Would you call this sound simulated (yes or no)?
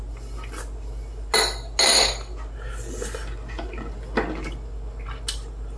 no